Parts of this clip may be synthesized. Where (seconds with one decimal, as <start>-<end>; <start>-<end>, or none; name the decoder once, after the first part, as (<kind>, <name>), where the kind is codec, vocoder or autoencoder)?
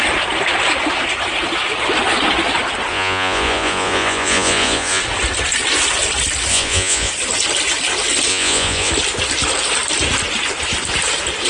2.9-5.0 (vocoder, Vocos); 6.5-7.1; 8.3-8.9